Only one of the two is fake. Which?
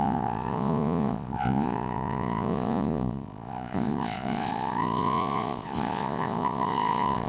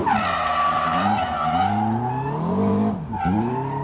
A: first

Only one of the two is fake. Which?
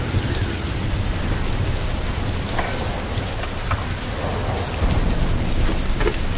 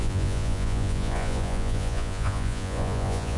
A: second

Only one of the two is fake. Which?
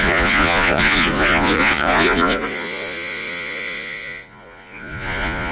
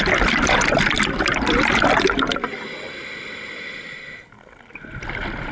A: first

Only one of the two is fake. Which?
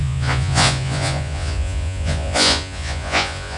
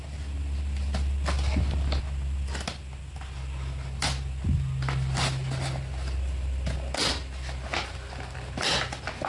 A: first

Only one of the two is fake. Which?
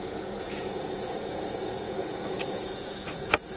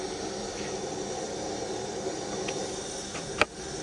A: first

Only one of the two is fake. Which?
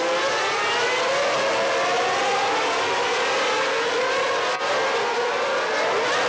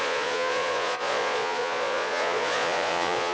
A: second